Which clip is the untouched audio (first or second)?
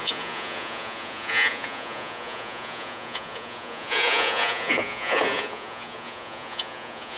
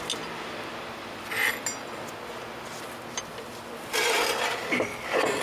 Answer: second